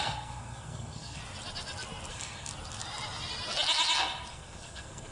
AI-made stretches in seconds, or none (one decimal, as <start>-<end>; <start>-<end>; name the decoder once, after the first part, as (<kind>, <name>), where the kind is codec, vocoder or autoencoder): 0.0-1.2 (codec, SNAC); 2.1-2.5; 4.3-5.1